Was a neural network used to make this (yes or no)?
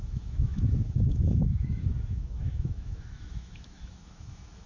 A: yes